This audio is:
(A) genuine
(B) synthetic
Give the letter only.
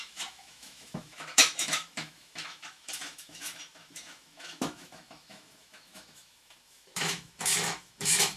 B